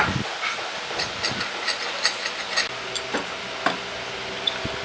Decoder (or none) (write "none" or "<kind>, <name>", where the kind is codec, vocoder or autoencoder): none